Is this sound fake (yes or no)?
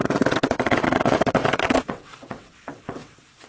yes